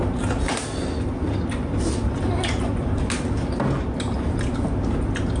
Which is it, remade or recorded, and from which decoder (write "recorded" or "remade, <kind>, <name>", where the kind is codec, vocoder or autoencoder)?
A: recorded